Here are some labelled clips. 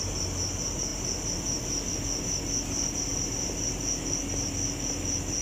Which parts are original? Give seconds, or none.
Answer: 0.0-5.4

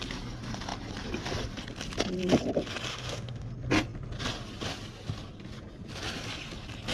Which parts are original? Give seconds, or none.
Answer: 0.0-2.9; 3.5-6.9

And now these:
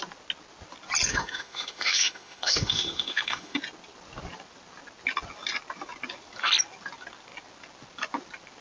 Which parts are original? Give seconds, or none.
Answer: 0.0-1.1; 3.6-8.6